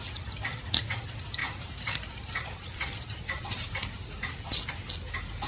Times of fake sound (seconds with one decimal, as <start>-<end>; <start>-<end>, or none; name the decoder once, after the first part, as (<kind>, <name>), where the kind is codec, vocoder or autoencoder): 1.4-4.7 (vocoder, BigVGAN v2)